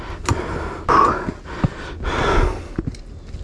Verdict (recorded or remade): recorded